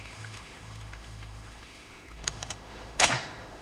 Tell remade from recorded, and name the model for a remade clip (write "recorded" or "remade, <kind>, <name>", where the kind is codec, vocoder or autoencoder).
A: remade, autoencoder, DAC-VAE